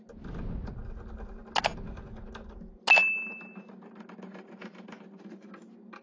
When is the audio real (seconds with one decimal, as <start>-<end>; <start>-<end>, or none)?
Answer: 0.0-6.0